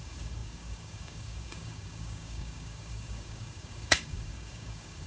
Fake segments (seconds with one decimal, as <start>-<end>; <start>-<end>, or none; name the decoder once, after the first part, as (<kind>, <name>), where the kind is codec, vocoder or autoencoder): 0.0-5.1 (codec, DAC)